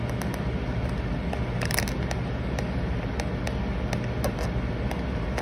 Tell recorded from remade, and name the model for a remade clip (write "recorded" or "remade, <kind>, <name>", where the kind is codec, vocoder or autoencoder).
recorded